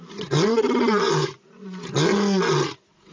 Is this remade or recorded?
recorded